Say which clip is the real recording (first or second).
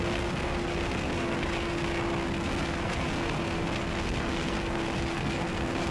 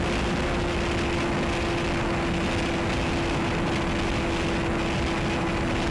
second